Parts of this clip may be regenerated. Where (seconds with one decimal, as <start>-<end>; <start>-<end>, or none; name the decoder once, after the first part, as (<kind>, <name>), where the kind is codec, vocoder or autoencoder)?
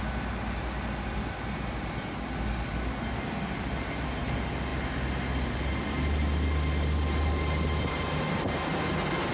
none